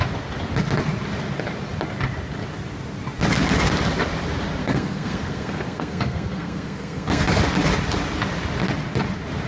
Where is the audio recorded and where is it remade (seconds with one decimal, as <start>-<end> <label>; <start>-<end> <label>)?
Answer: 0.0-4.6 recorded; 4.6-7.4 remade; 7.4-9.5 recorded